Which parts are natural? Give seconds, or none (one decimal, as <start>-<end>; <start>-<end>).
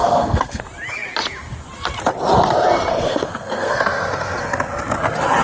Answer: 0.6-2.9; 3.8-5.4